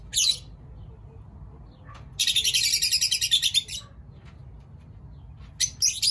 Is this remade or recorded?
recorded